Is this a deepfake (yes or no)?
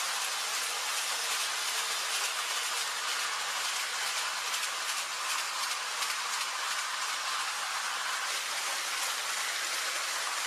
no